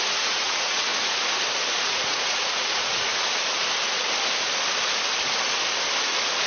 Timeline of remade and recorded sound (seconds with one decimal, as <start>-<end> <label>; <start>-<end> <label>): 0.0-0.9 remade; 0.9-1.8 recorded; 1.8-3.1 remade; 3.1-6.5 recorded